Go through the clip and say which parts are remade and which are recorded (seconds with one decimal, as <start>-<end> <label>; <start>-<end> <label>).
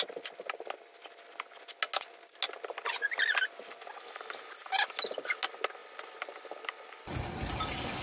0.0-8.0 recorded